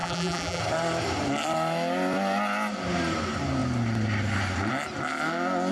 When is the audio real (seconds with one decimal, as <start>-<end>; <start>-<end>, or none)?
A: 0.6-5.7